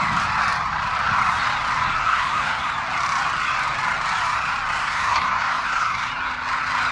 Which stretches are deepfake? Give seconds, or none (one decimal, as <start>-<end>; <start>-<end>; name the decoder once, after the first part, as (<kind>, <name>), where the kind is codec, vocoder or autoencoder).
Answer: 2.0-2.7 (codec, SNAC); 4.8-6.1